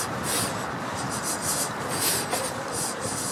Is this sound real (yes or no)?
no